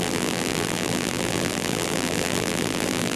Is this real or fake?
fake